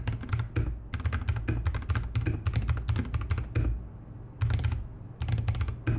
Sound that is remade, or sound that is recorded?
recorded